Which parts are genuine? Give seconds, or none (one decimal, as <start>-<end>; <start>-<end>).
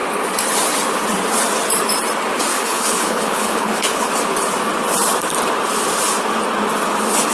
0.0-2.5; 4.1-7.3